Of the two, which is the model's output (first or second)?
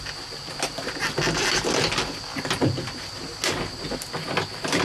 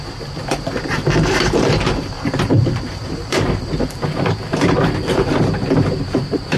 second